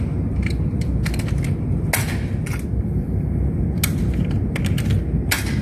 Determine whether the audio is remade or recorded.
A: recorded